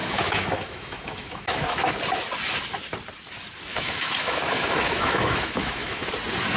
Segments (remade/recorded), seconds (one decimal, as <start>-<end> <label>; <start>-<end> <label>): 0.0-1.9 remade; 1.9-3.7 recorded; 3.7-6.1 remade; 6.1-6.6 recorded